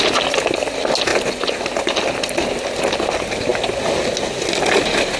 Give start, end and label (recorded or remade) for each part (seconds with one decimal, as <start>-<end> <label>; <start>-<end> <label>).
0.0-5.2 recorded